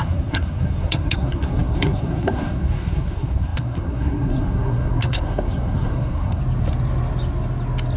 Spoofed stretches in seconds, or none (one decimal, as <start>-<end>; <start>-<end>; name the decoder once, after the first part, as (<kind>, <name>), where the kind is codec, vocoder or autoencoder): 0.0-6.4 (codec, SNAC)